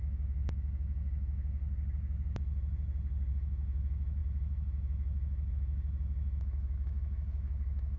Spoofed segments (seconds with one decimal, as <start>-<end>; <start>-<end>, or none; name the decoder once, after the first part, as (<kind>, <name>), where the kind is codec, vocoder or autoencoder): 0.0-1.6 (autoencoder, DAC-VAE); 3.3-8.0